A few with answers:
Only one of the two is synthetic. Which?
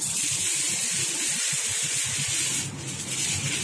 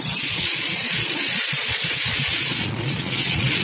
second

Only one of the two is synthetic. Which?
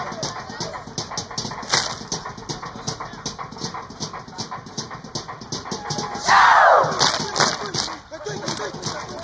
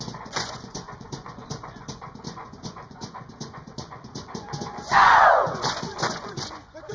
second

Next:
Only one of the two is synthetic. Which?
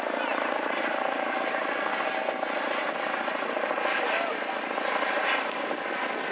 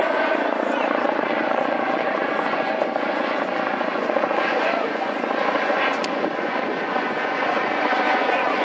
second